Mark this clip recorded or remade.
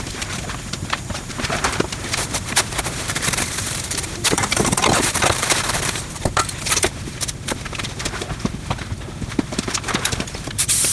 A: remade